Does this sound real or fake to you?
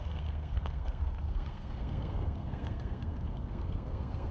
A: fake